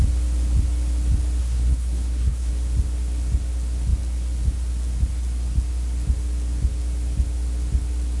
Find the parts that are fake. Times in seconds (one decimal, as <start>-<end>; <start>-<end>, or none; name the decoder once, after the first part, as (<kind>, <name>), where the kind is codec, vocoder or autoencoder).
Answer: 1.4-2.5 (codec, SNAC)